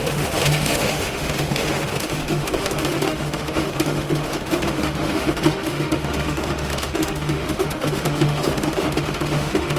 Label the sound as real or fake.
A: fake